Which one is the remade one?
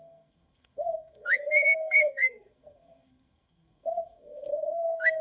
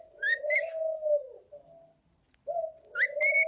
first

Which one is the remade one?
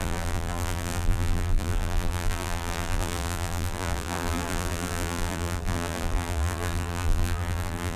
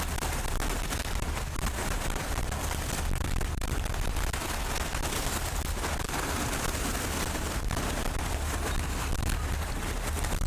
first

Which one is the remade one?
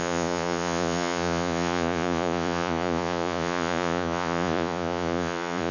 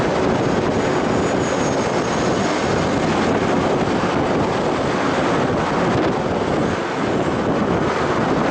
first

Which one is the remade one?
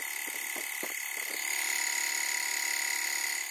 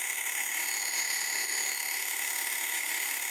second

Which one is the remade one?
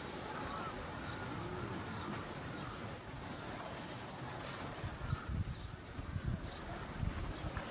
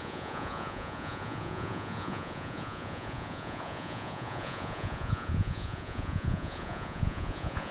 second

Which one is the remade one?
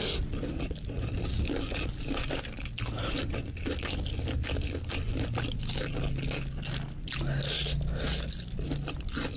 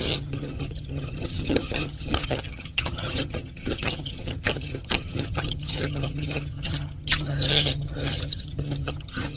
second